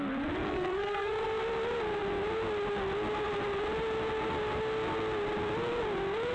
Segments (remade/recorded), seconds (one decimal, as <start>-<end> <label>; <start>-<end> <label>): 0.0-0.4 recorded; 0.4-1.1 remade; 1.1-6.3 recorded